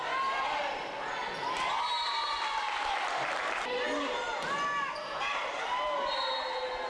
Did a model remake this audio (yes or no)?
no